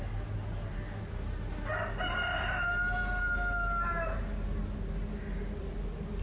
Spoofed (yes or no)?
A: no